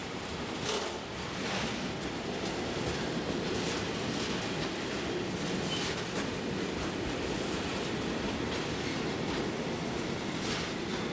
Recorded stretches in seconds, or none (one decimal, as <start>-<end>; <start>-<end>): 0.0-11.1